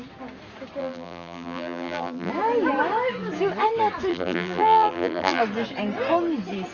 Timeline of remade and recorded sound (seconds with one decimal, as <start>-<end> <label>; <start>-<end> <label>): 0.0-0.8 recorded; 0.8-2.3 remade; 2.3-4.1 recorded; 4.1-5.4 remade; 5.4-6.7 recorded